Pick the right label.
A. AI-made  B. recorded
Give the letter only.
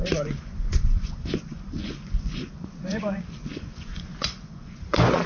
A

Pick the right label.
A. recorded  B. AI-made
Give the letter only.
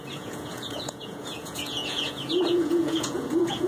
B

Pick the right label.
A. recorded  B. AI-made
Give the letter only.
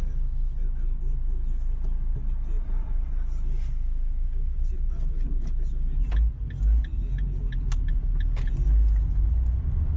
A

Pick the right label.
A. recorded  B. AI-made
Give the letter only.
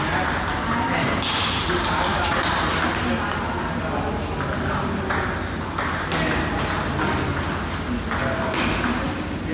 A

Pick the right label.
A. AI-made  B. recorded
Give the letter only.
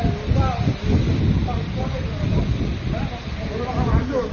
B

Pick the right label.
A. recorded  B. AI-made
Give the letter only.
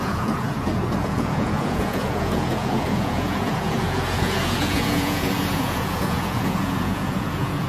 B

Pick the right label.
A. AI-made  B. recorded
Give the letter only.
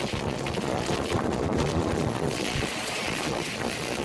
A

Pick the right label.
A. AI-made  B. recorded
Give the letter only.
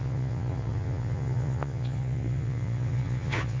A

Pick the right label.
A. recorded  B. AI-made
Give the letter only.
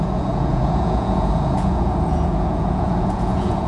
B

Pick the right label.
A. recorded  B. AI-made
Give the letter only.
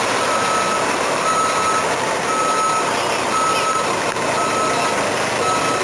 A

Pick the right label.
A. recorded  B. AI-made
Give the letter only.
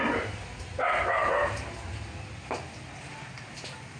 A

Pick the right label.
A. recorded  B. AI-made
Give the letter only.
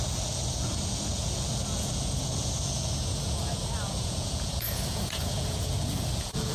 B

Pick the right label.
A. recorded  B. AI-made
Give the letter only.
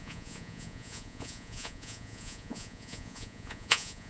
B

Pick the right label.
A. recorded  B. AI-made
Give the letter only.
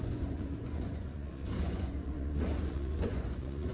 B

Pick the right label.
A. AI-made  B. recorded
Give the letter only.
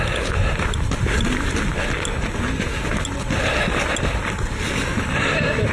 B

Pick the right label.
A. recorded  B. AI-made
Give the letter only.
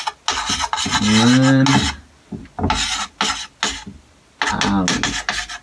A